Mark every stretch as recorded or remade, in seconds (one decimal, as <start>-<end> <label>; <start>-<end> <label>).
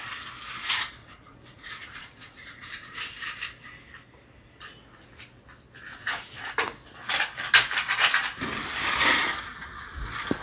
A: 0.0-1.0 recorded; 1.0-2.9 remade; 2.9-5.9 recorded; 5.9-6.5 remade; 6.5-10.4 recorded